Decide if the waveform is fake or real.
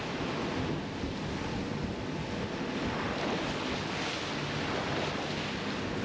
real